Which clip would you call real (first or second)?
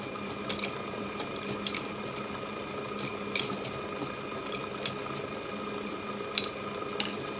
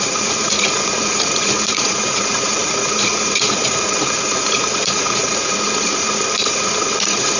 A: first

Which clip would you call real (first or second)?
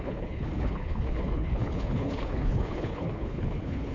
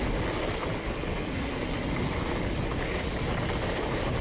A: second